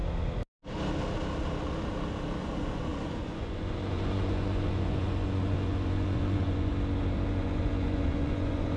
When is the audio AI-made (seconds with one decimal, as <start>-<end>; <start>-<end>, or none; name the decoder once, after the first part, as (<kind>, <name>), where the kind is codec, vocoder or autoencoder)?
2.4-6.7 (vocoder, Vocos); 7.3-8.8